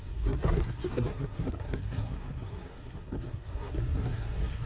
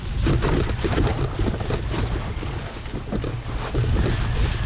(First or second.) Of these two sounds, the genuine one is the second